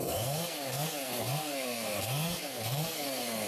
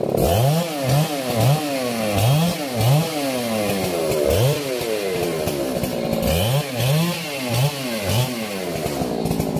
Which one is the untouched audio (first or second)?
second